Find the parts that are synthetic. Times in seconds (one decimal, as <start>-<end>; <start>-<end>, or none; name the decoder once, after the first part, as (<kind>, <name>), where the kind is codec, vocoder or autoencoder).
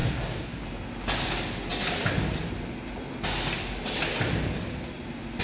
0.0-0.6 (codec, DAC)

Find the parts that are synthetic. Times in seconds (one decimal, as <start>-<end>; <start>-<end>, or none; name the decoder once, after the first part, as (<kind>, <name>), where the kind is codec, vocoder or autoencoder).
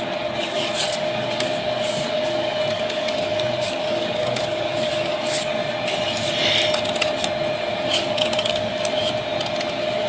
0.0-5.6 (codec, DAC); 7.8-8.7; 9.7-10.1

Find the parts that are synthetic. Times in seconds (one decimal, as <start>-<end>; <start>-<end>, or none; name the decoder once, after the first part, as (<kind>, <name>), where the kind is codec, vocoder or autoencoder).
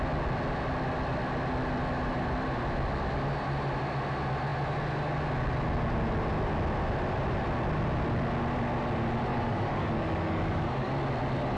9.3-10.9 (codec, DAC)